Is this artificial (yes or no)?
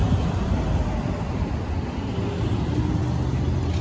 no